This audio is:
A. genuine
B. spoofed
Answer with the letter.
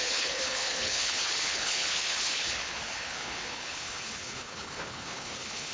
B